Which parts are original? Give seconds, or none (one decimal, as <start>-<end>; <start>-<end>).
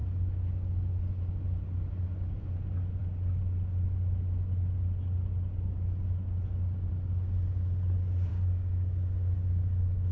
0.0-8.3